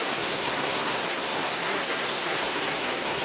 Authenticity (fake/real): fake